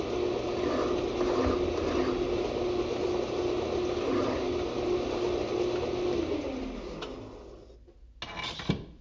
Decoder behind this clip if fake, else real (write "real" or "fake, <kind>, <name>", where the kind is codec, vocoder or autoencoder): real